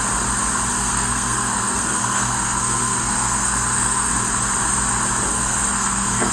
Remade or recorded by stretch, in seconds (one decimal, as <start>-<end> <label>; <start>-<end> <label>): 0.0-0.7 recorded; 0.7-4.1 remade; 4.1-5.3 recorded; 5.3-6.3 remade